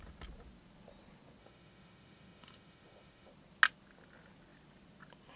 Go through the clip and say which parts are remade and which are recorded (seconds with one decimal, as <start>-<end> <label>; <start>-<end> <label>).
0.0-1.4 recorded; 1.4-3.3 remade; 3.3-5.4 recorded